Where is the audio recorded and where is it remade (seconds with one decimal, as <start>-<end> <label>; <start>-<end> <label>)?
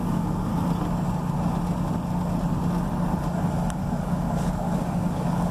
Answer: 0.0-0.5 remade; 0.5-3.8 recorded; 3.8-5.5 remade